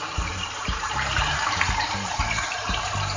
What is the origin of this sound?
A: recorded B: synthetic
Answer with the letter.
B